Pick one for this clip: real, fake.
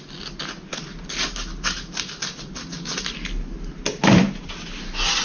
real